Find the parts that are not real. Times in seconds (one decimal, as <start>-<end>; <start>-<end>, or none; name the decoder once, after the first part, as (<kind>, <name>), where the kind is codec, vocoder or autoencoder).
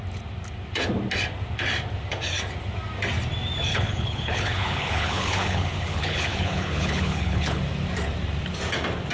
3.7-7.6 (codec, HILCodec)